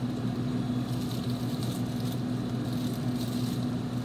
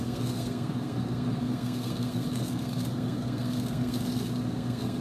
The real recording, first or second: first